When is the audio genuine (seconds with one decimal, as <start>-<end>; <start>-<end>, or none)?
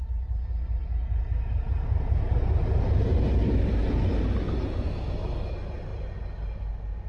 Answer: 0.0-7.1